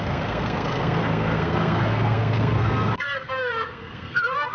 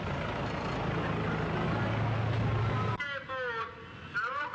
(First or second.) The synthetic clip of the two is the first